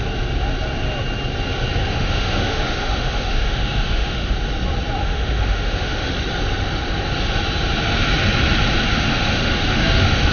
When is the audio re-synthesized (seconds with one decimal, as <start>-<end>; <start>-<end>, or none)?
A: 1.8-4.3; 5.0-6.1; 9.1-10.3